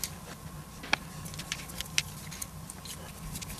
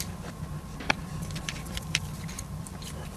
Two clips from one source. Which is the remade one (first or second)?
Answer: second